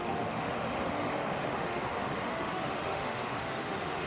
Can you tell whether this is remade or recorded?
remade